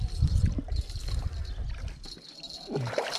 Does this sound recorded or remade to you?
recorded